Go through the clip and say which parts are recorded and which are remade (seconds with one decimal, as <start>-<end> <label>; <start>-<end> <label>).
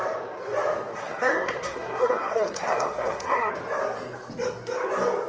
0.0-0.9 recorded; 0.9-3.5 remade; 3.5-5.3 recorded